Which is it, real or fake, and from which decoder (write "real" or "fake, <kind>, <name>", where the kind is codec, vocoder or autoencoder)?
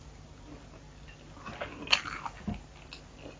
real